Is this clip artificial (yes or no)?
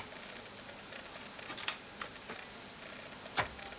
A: no